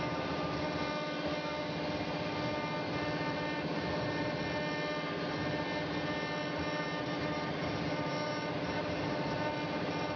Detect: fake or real real